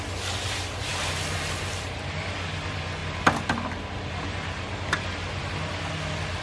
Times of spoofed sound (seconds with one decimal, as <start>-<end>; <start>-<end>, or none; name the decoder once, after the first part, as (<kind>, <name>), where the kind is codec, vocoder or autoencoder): none